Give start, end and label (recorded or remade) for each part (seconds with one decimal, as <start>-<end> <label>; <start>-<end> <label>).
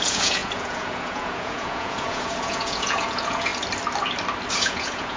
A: 0.0-3.5 remade; 3.5-4.5 recorded; 4.5-5.2 remade